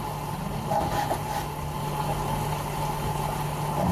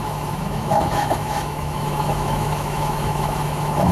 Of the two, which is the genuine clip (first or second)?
first